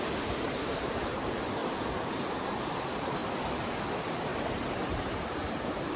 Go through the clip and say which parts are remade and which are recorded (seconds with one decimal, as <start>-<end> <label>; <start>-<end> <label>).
0.0-1.6 remade; 1.6-2.3 recorded; 2.3-3.2 remade; 3.2-3.8 recorded; 3.8-4.3 remade; 4.3-4.9 recorded; 4.9-6.0 remade